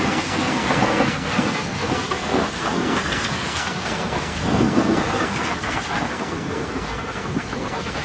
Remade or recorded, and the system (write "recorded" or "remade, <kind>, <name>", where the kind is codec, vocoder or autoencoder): remade, codec, SNAC